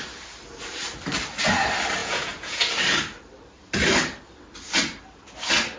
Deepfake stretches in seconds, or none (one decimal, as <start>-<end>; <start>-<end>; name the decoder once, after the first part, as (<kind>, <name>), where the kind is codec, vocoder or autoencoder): 2.0-2.7 (vocoder, Vocos)